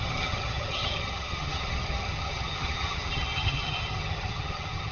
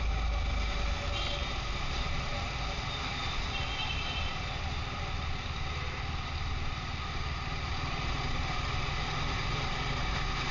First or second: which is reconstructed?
first